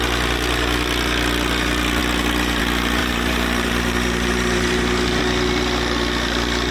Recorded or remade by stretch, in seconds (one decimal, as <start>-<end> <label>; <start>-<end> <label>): 0.0-3.0 recorded; 3.0-5.2 remade; 5.2-6.7 recorded

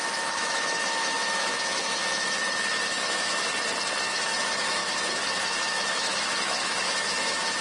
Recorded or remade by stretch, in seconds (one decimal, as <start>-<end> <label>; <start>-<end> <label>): 0.0-3.5 remade; 3.5-4.0 recorded; 4.0-7.6 remade